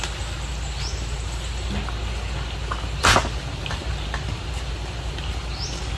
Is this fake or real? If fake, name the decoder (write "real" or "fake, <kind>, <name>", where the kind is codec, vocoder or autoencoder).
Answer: real